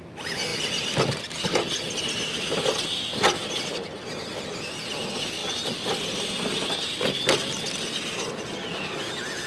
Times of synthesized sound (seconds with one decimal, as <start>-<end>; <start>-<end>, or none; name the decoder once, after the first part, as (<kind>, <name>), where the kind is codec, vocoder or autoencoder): none